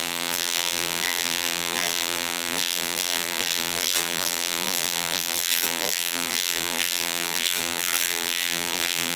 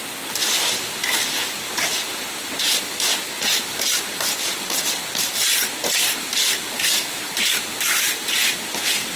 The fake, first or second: first